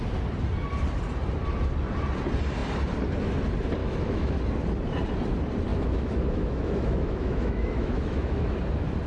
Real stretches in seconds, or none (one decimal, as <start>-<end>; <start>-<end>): 0.0-3.8; 4.3-5.7; 8.6-9.1